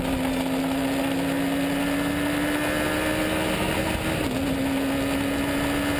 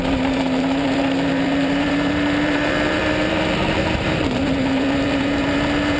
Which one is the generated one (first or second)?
second